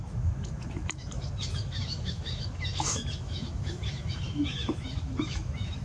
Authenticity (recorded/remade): remade